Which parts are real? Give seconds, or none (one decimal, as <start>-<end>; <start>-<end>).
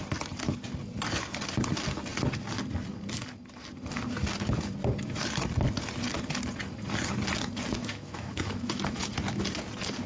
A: 0.0-7.8; 9.1-10.1